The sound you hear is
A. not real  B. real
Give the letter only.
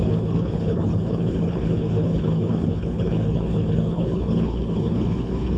A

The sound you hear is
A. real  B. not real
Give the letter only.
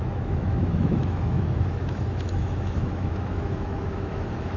B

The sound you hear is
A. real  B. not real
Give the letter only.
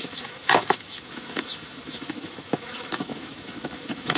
B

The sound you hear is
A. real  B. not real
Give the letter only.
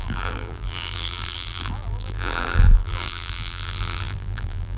B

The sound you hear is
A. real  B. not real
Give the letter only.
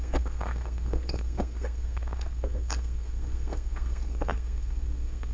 B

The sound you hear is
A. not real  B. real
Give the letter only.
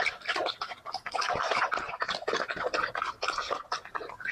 B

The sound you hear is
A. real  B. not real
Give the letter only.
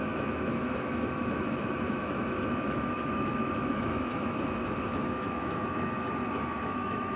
B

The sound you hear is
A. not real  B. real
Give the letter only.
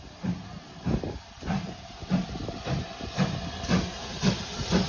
B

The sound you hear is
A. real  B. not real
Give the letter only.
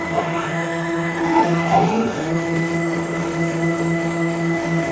B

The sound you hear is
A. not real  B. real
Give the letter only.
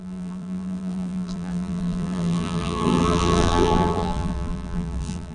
A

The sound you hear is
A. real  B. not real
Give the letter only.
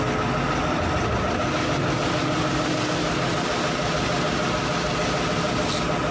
A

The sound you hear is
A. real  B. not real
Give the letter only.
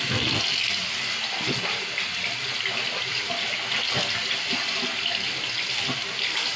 A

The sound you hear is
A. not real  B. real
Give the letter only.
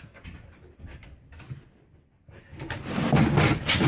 B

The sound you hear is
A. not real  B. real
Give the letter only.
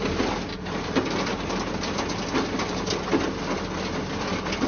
B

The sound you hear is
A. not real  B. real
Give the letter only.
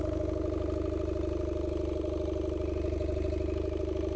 B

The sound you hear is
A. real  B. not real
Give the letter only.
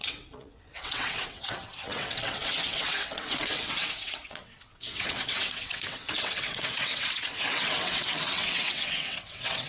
B